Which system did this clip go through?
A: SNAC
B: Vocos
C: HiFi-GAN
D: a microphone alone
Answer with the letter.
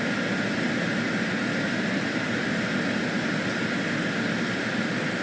D